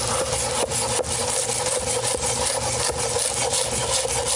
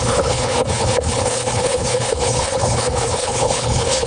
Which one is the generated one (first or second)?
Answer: second